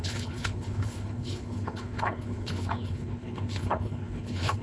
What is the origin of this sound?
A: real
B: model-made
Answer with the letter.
B